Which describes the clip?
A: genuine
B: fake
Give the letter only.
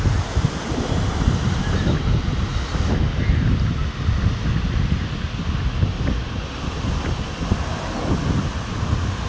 A